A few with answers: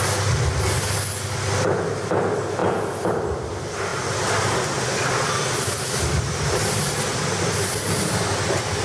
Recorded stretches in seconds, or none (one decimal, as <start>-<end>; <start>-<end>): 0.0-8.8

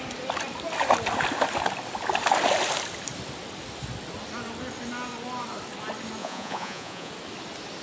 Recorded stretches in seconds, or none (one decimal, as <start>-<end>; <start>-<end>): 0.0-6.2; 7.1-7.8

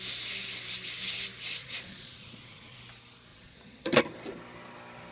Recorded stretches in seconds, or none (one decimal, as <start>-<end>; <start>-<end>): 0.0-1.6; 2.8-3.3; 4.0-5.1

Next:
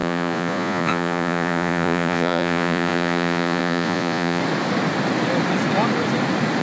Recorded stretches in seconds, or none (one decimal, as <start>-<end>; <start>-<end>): 4.4-6.6

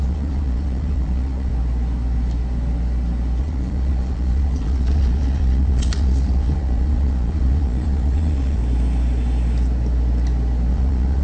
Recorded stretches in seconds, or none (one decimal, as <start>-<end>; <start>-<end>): 1.5-3.4; 8.6-10.7

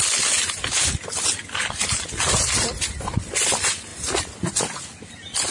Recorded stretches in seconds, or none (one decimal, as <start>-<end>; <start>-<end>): 0.0-5.5

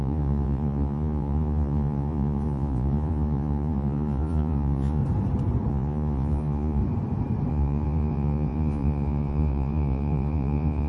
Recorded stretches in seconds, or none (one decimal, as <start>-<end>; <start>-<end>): 5.0-5.7; 6.8-7.5

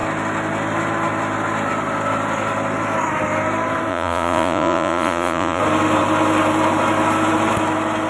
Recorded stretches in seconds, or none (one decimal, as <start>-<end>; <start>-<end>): 0.0-3.9; 5.6-8.1